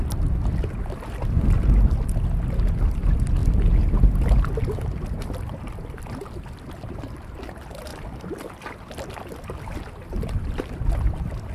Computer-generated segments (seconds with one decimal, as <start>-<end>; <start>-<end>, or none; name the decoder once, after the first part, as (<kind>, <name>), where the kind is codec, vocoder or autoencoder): 3.4-6.0 (vocoder, BigVGAN v2); 7.9-10.8